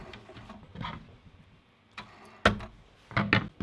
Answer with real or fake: real